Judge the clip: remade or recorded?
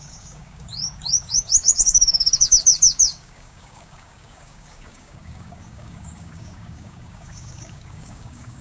remade